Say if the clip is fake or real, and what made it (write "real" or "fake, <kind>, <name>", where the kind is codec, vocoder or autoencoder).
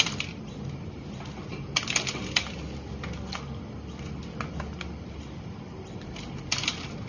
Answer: real